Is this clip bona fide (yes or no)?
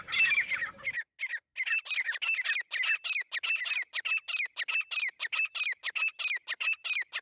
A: yes